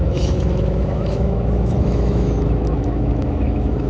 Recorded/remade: remade